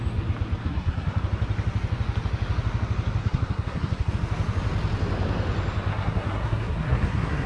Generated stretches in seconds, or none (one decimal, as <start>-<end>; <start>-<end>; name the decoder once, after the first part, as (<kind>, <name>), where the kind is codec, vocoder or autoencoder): 0.6-1.2 (codec, SNAC); 3.2-4.1; 5.9-7.5